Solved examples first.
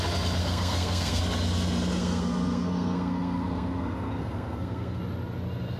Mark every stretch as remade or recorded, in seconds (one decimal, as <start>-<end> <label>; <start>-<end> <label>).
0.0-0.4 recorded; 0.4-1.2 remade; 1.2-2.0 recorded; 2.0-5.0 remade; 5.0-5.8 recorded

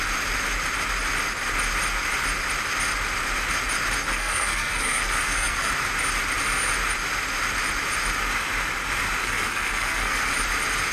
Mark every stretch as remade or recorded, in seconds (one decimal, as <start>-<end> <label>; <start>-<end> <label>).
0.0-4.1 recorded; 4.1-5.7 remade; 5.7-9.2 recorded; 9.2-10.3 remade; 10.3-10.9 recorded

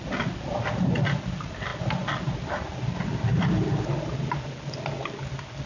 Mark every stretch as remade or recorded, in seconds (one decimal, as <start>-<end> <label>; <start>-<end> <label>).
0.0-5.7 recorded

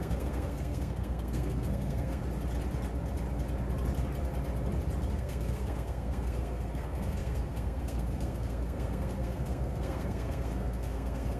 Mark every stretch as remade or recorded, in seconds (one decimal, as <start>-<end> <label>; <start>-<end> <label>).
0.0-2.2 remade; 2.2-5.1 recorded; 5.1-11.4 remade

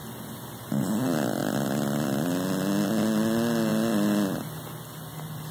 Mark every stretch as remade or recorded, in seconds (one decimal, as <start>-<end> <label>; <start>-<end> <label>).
0.0-5.5 recorded

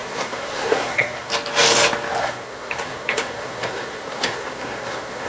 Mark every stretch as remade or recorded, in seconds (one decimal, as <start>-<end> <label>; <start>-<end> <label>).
0.0-1.3 remade; 1.3-2.2 recorded; 2.2-5.3 remade

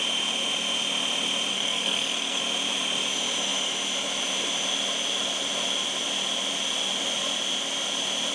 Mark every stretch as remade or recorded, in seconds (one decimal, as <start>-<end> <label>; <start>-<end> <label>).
0.0-1.5 recorded; 1.5-2.4 remade; 2.4-8.3 recorded